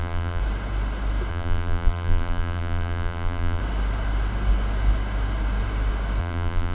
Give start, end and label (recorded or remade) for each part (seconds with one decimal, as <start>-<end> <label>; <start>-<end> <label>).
0.0-0.4 remade; 0.4-1.3 recorded; 1.3-3.6 remade; 3.6-6.2 recorded; 6.2-6.7 remade